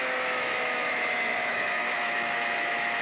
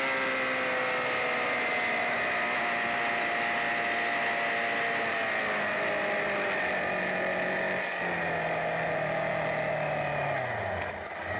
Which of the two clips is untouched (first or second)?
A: second